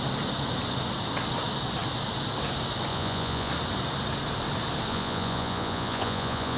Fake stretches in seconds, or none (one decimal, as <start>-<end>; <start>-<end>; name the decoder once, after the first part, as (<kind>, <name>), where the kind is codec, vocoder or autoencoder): 2.9-3.5 (vocoder, Vocos); 4.9-6.6

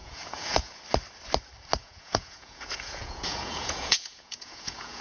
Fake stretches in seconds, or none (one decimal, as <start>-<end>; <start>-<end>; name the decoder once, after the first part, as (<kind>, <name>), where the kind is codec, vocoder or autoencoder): 0.0-0.8 (vocoder, Vocos); 1.8-5.0

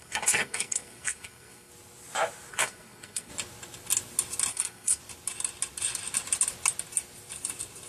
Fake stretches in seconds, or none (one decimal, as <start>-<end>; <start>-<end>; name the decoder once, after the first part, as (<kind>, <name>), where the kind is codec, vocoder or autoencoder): 0.0-1.7 (codec, SNAC); 2.5-3.3; 4.5-5.0

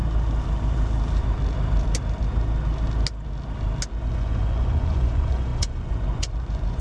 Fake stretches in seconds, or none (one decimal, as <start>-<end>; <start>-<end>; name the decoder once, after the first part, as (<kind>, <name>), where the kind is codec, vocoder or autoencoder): 4.1-6.8 (vocoder, Vocos)

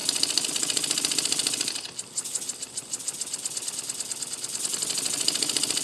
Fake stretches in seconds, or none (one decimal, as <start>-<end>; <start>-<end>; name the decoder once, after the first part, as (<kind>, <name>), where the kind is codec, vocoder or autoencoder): none

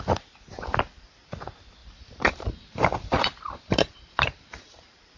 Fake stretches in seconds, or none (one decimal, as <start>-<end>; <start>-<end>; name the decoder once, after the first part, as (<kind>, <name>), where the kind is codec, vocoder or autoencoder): 1.8-4.8 (vocoder, BigVGAN v2)

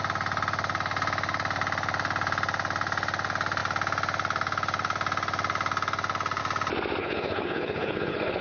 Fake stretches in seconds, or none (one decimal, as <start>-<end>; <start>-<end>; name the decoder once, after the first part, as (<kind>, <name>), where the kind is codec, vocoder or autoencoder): 7.0-8.4 (codec, HILCodec)

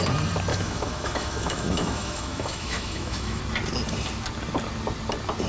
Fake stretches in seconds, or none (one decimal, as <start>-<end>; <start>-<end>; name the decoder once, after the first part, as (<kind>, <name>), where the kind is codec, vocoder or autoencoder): 0.5-3.4 (autoencoder, DAC-VAE)